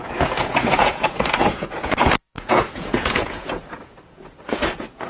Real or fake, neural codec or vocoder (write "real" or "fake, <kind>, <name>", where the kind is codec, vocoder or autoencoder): fake, vocoder, Vocos